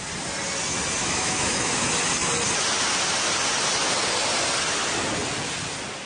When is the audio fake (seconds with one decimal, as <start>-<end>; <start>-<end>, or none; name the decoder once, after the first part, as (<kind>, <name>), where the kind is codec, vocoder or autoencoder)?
1.0-1.7 (autoencoder, DAC-VAE)